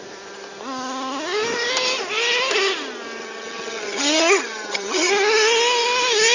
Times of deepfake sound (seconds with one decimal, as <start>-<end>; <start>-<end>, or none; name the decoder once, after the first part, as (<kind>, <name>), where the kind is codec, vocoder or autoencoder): 3.2-5.1 (vocoder, HiFi-GAN)